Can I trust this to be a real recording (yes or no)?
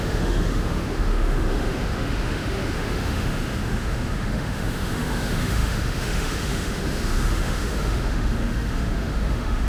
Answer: no